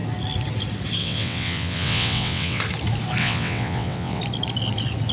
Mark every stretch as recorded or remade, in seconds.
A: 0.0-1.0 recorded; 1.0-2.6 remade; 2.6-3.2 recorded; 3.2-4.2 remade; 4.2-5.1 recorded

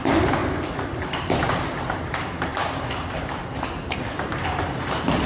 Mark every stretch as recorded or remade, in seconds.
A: 0.0-5.3 recorded

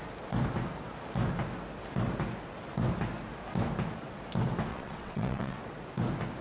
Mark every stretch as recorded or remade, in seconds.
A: 0.0-4.7 recorded; 4.7-5.6 remade; 5.6-6.4 recorded